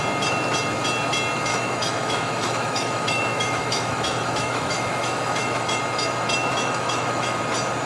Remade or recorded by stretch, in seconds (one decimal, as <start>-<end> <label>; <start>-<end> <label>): 0.0-1.5 recorded; 1.5-5.8 remade; 5.8-6.5 recorded; 6.5-7.4 remade; 7.4-7.9 recorded